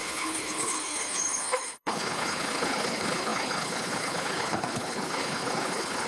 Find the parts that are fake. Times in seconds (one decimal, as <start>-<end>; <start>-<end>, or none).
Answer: 0.0-6.1